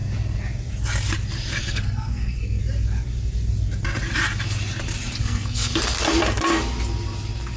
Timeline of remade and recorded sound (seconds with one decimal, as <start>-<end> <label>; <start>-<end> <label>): 0.0-1.6 recorded; 1.6-2.6 remade; 2.6-5.2 recorded; 5.2-5.7 remade; 5.7-7.6 recorded

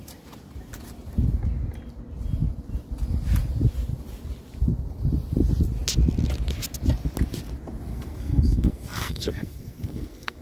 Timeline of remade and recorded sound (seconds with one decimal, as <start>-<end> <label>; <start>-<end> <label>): 0.0-7.9 recorded; 7.9-10.4 remade

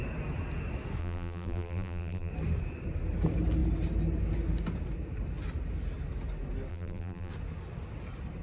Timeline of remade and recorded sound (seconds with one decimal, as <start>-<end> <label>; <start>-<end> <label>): 0.0-1.0 recorded; 1.0-2.3 remade; 2.3-6.7 recorded; 6.7-7.3 remade; 7.3-8.4 recorded

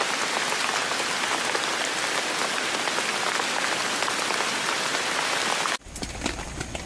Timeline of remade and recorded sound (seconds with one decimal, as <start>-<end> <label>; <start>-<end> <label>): 0.0-6.9 recorded